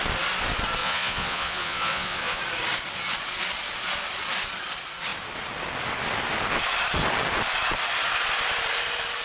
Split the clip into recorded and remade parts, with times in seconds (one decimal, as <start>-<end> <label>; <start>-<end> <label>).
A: 0.0-0.8 recorded; 0.8-2.4 remade; 2.4-9.2 recorded